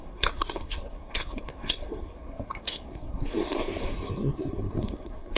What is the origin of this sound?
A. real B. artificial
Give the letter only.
B